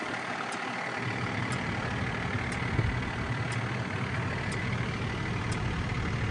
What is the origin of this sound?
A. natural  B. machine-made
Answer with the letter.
A